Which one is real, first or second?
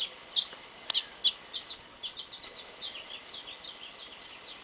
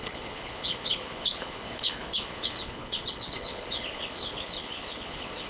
first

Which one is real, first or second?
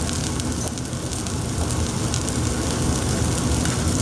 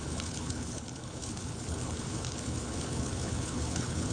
first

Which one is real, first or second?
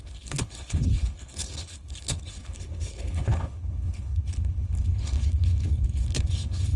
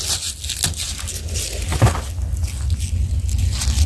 second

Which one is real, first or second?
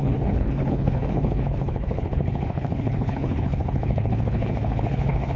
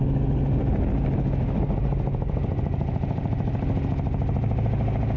second